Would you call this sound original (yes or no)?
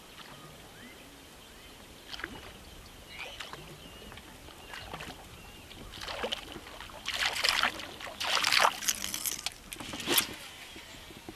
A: yes